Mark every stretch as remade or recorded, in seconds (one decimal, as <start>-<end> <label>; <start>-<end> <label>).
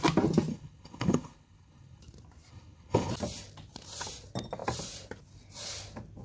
0.0-0.5 recorded; 0.5-2.0 remade; 2.0-2.5 recorded; 2.5-3.1 remade; 3.1-6.2 recorded